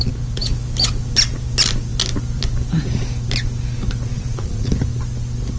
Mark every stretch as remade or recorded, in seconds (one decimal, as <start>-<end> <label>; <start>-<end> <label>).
0.0-4.1 recorded; 4.1-4.7 remade; 4.7-5.6 recorded